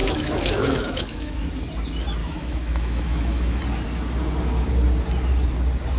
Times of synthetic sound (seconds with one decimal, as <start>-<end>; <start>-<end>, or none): 0.0-1.5; 2.2-3.6